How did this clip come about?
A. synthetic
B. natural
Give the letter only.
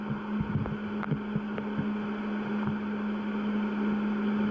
B